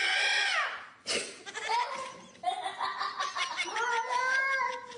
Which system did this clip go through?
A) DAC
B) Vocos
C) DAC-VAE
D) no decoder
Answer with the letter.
D